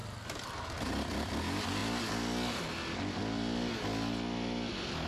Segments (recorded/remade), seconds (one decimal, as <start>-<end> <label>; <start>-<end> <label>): 0.0-5.1 recorded